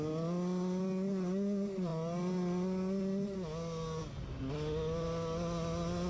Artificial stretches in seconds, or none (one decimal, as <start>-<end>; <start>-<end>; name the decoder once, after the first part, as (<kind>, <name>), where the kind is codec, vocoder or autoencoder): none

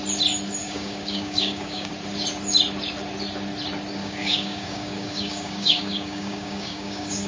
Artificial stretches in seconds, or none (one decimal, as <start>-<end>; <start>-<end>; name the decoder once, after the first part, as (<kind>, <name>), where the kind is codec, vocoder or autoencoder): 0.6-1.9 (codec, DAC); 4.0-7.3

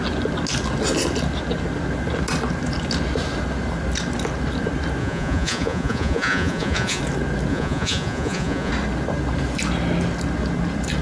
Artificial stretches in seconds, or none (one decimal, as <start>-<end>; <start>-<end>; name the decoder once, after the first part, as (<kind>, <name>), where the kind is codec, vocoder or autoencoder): 5.0-7.0 (vocoder, Vocos); 7.5-8.7